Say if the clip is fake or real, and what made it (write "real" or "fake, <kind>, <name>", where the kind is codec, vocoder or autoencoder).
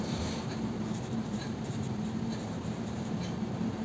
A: fake, vocoder, BigVGAN v2